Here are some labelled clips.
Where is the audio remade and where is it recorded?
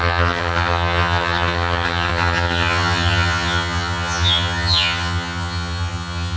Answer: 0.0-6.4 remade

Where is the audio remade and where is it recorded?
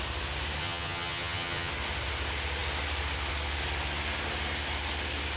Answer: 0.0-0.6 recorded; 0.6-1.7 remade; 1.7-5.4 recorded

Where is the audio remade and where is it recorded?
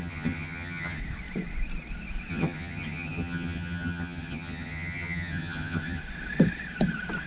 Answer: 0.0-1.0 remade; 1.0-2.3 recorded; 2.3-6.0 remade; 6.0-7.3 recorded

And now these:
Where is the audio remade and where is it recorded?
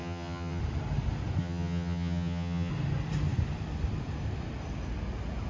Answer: 0.0-0.6 remade; 0.6-1.4 recorded; 1.4-2.7 remade; 2.7-5.5 recorded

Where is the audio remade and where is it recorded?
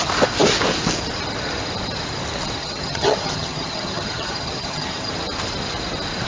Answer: 0.0-2.6 recorded; 2.6-5.1 remade; 5.1-6.3 recorded